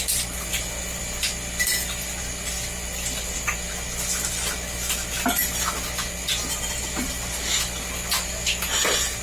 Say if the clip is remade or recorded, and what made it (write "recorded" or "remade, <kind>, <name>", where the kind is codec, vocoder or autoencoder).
recorded